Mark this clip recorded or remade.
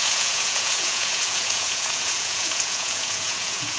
remade